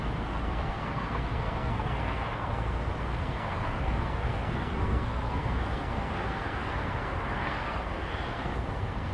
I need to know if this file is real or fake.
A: fake